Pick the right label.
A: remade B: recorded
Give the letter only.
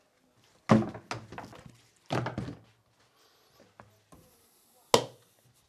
B